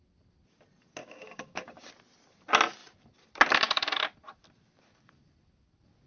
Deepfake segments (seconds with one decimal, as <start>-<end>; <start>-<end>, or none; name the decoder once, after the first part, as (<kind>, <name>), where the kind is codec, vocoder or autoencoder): 1.0-1.9 (codec, DAC)